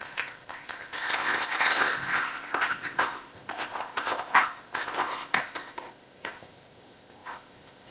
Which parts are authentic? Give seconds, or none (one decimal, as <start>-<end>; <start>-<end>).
none